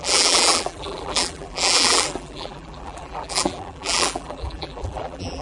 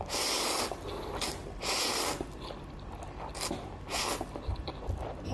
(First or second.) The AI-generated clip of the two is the first